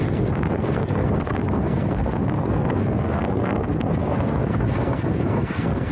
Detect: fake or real fake